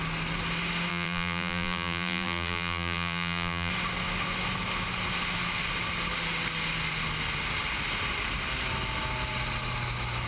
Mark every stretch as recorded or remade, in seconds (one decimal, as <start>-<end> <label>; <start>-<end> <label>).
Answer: 0.0-0.9 recorded; 0.9-3.7 remade; 3.7-10.3 recorded